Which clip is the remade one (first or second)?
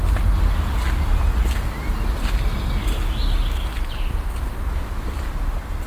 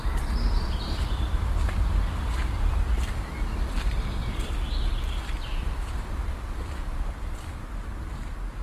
second